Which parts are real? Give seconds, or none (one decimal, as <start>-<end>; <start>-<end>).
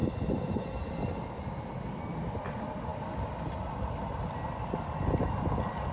0.0-5.9